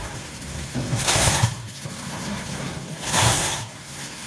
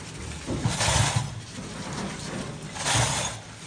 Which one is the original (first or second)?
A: second